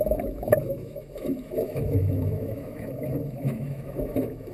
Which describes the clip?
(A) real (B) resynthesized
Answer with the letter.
B